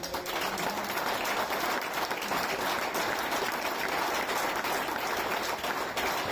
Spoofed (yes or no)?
no